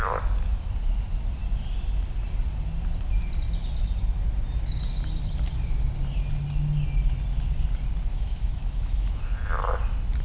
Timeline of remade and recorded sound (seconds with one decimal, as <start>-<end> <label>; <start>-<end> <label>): 0.0-8.1 recorded; 8.1-9.1 remade; 9.1-10.2 recorded